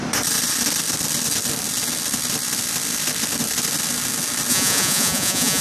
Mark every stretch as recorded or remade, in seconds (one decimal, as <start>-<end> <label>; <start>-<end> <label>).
0.0-4.5 recorded; 4.5-5.6 remade